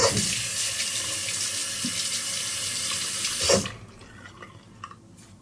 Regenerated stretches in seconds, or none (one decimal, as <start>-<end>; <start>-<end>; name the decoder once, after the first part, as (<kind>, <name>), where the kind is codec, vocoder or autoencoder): none

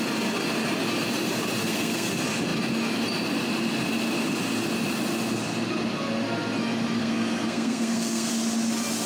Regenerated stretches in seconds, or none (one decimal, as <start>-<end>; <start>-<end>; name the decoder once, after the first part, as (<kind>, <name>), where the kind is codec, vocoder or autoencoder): 1.6-2.1 (codec, SNAC); 7.0-8.3

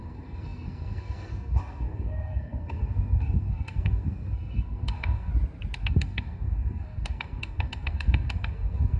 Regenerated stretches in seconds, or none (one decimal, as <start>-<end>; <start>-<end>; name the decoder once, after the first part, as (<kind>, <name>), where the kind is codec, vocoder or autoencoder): 0.0-5.3 (codec, SNAC); 5.8-9.0

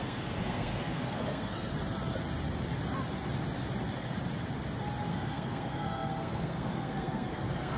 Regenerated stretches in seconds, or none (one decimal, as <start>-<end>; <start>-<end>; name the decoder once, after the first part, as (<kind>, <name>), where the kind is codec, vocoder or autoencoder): 0.0-1.7 (codec, SNAC); 5.1-7.8

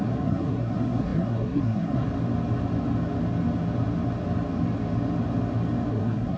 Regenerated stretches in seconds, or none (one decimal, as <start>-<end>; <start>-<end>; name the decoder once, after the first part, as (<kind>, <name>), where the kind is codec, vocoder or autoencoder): 0.0-2.1 (codec, SNAC); 5.9-6.4

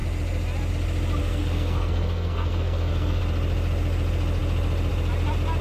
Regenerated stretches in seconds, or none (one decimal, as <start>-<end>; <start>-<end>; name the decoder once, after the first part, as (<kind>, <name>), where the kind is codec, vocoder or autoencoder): 1.2-3.2 (codec, SNAC)

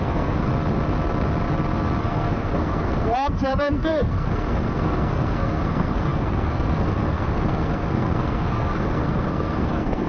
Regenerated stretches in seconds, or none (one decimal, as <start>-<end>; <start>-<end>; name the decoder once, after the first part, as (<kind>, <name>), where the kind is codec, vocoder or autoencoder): 0.0-0.5 (codec, SNAC); 2.0-10.1